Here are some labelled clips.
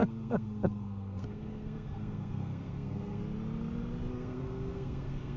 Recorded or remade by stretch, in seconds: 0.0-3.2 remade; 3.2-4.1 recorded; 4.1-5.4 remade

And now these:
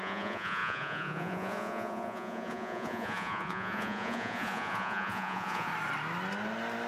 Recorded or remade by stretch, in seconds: 0.0-5.7 remade; 5.7-6.9 recorded